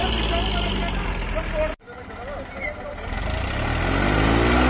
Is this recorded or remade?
recorded